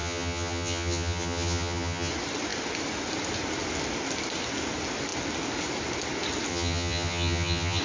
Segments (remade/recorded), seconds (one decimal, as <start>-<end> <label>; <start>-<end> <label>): 0.0-2.1 remade; 2.1-6.5 recorded; 6.5-7.8 remade